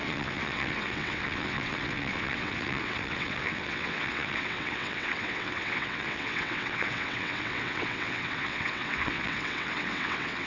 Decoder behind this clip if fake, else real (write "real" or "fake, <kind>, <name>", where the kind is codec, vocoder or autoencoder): fake, vocoder, WaveNeXt